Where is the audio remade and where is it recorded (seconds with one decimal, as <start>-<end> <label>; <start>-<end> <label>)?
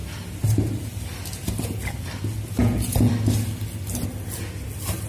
0.0-2.6 recorded; 2.6-3.1 remade; 3.1-5.1 recorded